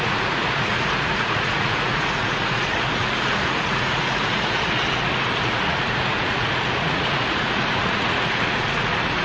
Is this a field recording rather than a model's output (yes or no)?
no